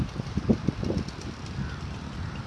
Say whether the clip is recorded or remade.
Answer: recorded